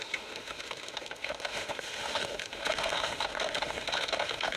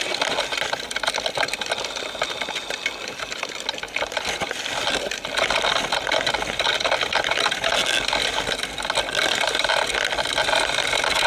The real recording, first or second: second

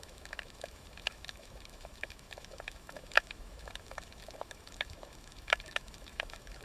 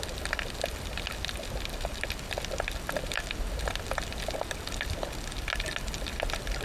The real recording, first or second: second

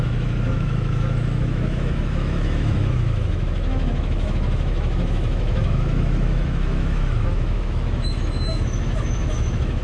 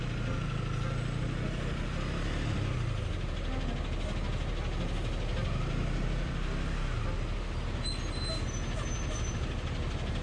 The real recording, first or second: second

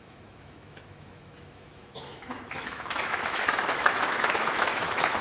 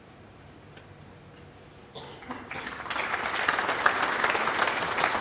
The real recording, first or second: second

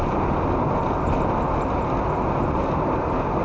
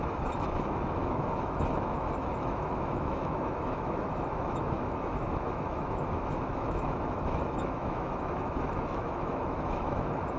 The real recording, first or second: first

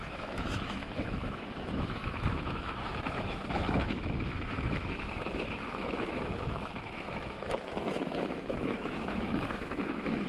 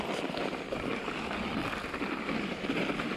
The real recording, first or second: second